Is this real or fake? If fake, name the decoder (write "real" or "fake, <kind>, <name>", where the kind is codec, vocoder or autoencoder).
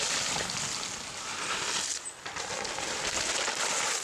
real